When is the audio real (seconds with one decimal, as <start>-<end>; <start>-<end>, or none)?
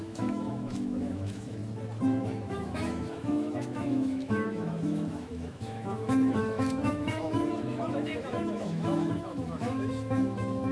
1.6-2.2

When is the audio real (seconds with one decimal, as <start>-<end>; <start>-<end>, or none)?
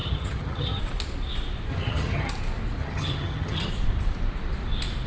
0.8-1.7; 2.3-2.8; 3.7-5.1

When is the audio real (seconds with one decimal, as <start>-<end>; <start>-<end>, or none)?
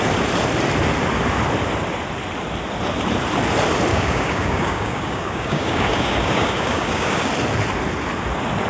0.0-3.9; 7.3-8.7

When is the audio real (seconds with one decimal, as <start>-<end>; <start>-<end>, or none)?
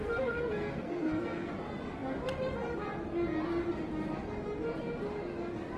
1.5-5.8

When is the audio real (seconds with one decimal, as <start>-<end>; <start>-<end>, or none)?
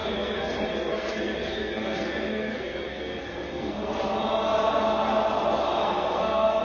4.0-5.8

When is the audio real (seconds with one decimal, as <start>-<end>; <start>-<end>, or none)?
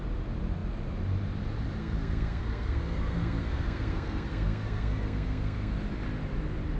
0.0-1.8; 5.8-6.8